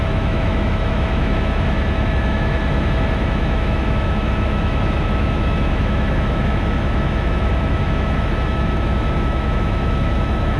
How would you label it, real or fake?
fake